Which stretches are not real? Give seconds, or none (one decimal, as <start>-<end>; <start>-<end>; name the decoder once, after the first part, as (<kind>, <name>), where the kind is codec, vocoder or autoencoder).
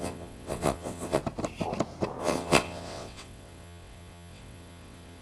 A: 0.0-1.2 (vocoder, WaveNeXt); 2.2-5.2